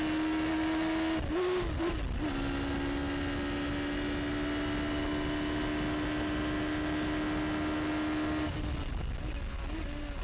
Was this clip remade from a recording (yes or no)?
no